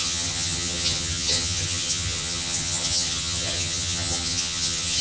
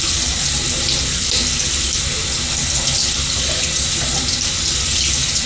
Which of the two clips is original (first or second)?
second